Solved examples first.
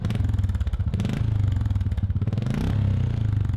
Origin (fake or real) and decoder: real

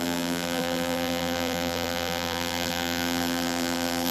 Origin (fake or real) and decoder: fake, vocoder, BigVGAN v2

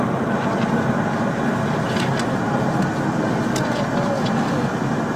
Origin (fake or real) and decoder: real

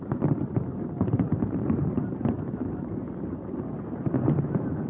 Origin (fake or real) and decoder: fake, vocoder, BigVGAN v2